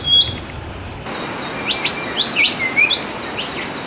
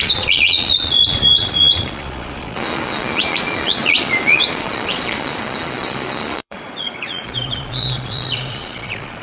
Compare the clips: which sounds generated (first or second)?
second